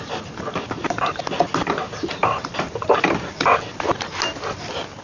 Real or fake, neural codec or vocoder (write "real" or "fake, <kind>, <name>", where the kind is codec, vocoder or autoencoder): real